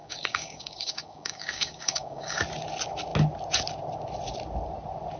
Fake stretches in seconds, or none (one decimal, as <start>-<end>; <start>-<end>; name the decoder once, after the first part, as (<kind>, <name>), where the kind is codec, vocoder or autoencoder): 0.0-2.4 (codec, DAC)